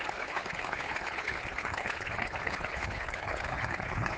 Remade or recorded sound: remade